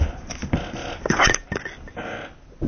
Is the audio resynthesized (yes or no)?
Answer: no